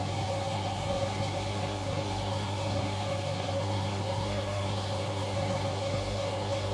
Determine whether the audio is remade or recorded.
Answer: remade